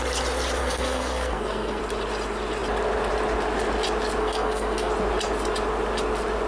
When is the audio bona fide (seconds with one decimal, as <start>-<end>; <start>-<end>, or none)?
0.0-0.6; 1.8-4.2; 4.9-6.5